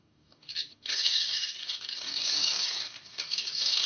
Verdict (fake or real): fake